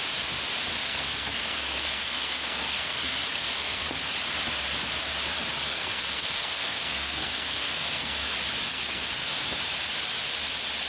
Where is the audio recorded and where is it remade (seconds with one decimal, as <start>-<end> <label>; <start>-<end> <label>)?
0.0-0.8 recorded; 0.8-4.0 remade; 4.0-5.7 recorded; 5.7-8.2 remade; 8.2-8.7 recorded; 8.7-9.3 remade; 9.3-10.9 recorded